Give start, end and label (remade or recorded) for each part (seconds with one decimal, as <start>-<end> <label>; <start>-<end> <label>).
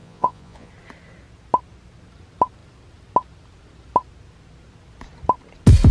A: 0.0-0.7 remade; 0.7-5.9 recorded